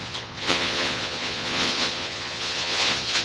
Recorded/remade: remade